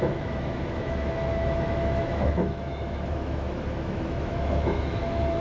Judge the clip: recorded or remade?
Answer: remade